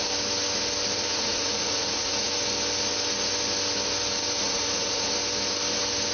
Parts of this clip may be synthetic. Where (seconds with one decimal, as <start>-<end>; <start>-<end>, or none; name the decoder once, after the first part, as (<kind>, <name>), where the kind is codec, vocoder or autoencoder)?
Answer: 1.1-2.3 (vocoder, Vocos); 4.4-5.1